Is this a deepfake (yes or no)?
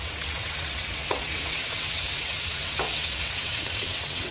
yes